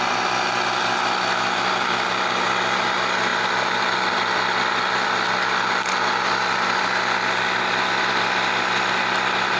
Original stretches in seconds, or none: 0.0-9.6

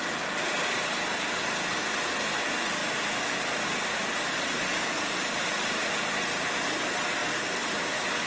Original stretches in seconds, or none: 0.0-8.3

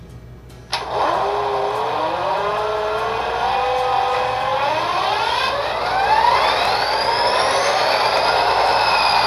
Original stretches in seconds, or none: 0.0-9.3

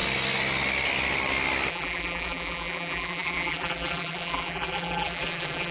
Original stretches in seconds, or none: 0.0-1.7

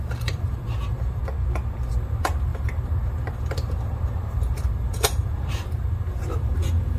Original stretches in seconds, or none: 1.2-1.9